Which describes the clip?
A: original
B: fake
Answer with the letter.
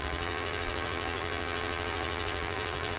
B